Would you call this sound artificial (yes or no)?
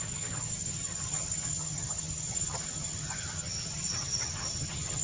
yes